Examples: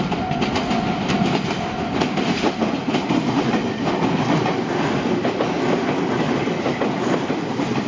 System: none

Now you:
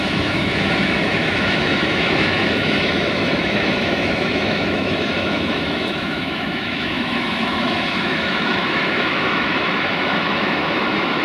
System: autoencoder, DAC-VAE